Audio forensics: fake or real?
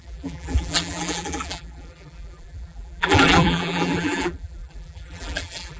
fake